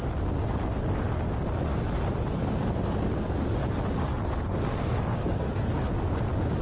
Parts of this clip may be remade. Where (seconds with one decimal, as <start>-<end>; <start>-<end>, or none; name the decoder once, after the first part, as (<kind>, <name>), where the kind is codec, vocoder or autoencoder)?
5.2-5.7 (codec, SNAC)